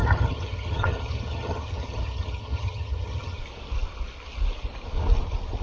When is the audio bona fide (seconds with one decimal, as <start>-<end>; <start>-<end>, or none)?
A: 3.4-5.6